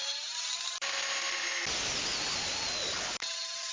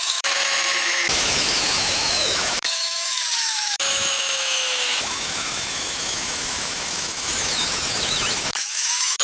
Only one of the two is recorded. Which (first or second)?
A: first